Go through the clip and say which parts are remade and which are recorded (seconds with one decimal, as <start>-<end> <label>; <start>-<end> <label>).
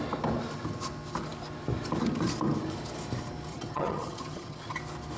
0.0-3.5 recorded; 3.5-4.8 remade; 4.8-5.2 recorded